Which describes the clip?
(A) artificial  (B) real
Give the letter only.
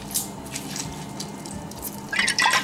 B